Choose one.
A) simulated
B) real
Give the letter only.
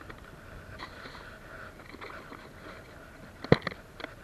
B